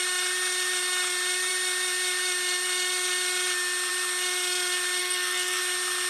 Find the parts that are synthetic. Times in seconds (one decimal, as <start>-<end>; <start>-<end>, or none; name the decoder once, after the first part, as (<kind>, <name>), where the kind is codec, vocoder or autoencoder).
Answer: 5.0-5.6 (codec, SNAC)